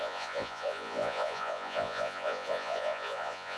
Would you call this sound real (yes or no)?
no